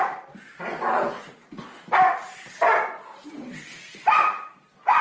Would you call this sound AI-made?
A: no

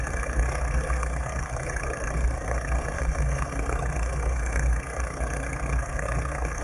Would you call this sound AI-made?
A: yes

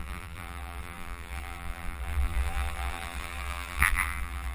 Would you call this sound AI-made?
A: yes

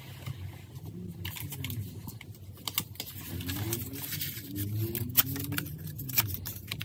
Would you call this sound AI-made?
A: no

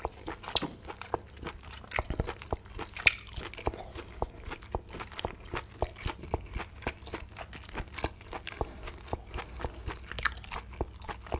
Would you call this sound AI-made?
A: no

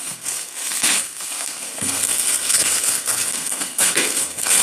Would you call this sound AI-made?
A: yes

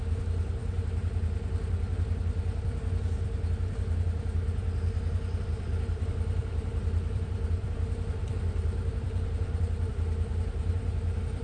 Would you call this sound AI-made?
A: yes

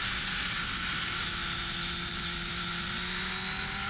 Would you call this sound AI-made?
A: no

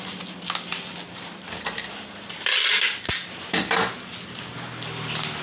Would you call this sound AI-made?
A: no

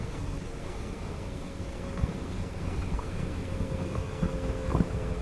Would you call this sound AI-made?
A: yes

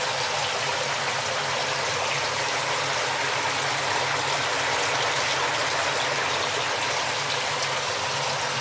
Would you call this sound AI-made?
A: no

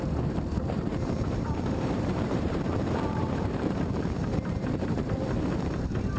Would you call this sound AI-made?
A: yes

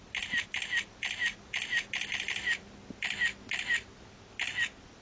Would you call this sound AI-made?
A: no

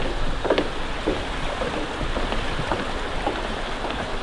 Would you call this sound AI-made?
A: no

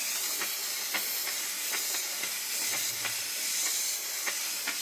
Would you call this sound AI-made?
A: yes